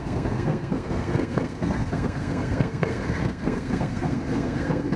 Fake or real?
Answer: fake